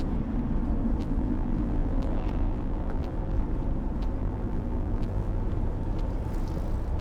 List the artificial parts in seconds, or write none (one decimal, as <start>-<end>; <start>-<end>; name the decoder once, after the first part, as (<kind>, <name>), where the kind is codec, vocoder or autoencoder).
1.0-3.4 (vocoder, BigVGAN v2); 4.2-5.4